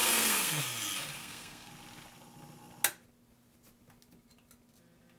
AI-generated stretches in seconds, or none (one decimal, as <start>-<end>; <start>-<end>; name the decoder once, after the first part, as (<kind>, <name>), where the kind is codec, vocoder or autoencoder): 0.0-0.6 (codec, SNAC); 1.2-1.7